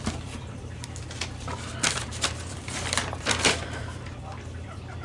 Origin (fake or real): fake